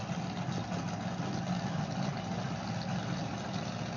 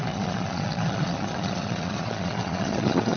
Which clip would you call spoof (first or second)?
second